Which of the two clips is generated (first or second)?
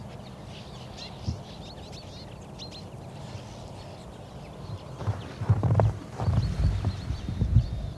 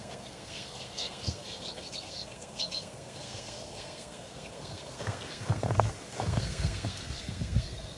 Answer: second